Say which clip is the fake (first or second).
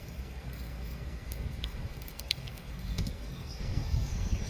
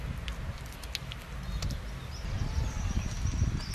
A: first